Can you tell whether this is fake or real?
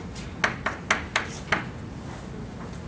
real